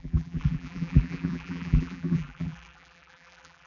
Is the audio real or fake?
fake